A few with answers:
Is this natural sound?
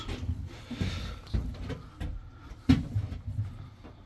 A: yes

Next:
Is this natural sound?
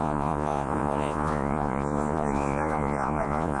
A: no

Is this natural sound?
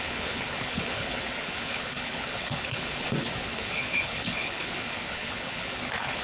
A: no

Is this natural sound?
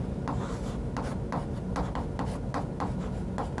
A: yes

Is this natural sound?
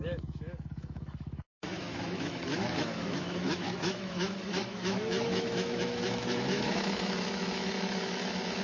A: no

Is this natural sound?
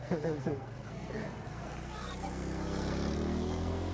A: no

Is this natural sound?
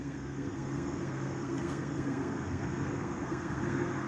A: no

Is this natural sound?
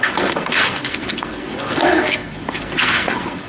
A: no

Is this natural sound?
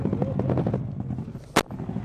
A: yes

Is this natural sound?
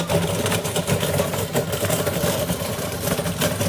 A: yes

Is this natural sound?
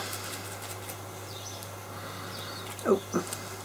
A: yes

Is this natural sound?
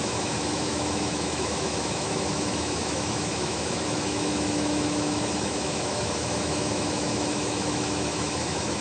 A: no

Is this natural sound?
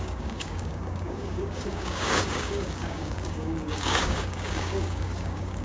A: no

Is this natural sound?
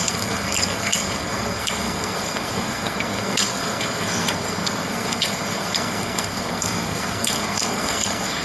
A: no